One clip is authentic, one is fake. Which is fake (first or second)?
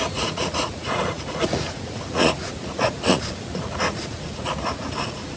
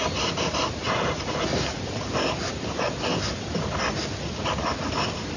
first